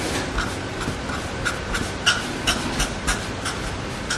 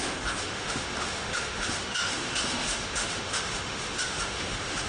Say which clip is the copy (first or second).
second